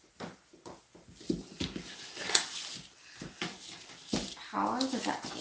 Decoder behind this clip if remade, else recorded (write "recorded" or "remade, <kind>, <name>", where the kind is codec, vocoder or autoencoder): recorded